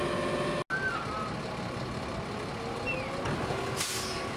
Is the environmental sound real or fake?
real